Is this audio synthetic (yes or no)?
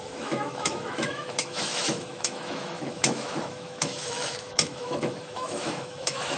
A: yes